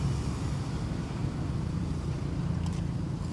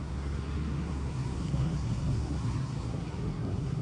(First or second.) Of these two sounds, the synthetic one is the second